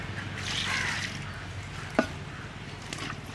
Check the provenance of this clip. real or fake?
real